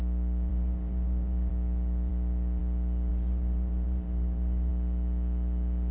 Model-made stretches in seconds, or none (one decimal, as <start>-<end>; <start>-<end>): 0.5-1.5; 3.1-4.7